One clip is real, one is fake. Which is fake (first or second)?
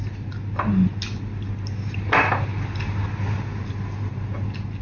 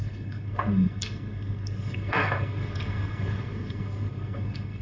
second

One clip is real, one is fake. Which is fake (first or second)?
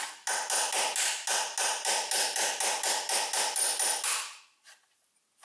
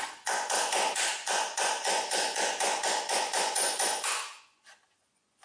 second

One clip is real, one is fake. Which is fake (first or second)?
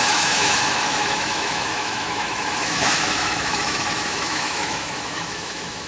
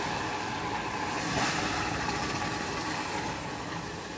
first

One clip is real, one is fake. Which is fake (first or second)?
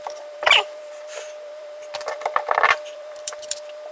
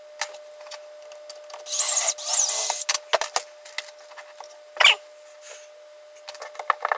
first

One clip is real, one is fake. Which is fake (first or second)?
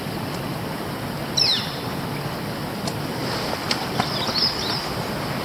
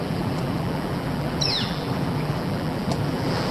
second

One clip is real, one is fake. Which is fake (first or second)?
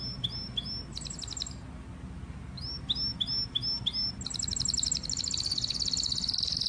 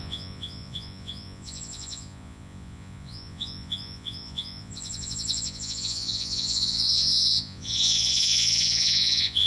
second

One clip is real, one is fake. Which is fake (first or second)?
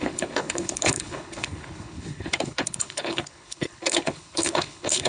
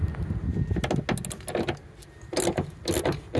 first